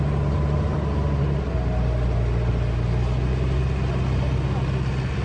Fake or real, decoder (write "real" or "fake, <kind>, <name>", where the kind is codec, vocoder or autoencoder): real